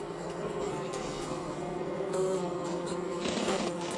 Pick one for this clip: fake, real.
fake